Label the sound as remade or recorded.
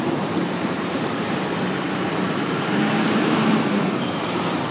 remade